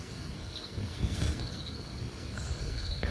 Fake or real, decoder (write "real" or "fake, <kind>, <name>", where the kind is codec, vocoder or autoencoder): fake, codec, SNAC